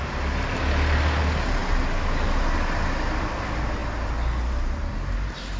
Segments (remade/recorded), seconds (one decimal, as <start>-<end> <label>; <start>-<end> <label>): 0.0-5.6 recorded